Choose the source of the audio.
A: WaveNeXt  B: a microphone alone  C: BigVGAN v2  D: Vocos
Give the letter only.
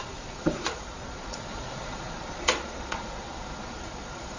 D